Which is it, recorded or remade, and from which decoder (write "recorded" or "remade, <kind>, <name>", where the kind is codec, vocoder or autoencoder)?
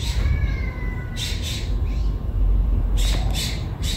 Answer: remade, vocoder, BigVGAN v2